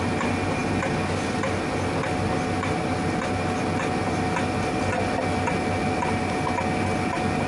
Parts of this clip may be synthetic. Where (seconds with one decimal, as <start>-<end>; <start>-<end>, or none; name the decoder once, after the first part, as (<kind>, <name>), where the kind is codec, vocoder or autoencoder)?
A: none